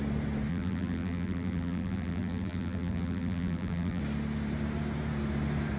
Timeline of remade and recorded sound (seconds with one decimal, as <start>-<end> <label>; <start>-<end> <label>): 0.0-0.5 recorded; 0.5-4.0 remade; 4.0-5.8 recorded

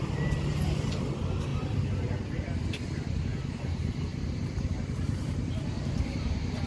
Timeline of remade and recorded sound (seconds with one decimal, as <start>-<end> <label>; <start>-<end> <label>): 0.0-4.1 recorded; 4.1-6.7 remade

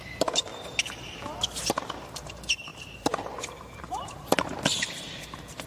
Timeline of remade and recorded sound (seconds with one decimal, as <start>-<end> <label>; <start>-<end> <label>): 0.0-0.5 remade; 0.5-1.7 recorded; 1.7-5.7 remade